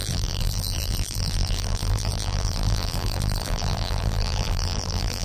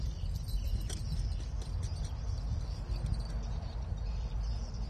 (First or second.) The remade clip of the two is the first